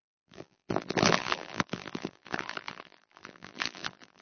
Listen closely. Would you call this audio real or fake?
fake